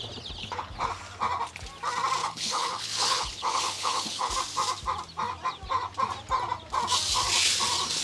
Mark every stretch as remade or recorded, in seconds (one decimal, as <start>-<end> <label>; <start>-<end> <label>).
0.0-0.4 recorded; 0.4-0.9 remade; 0.9-2.2 recorded; 2.2-4.3 remade; 4.3-8.0 recorded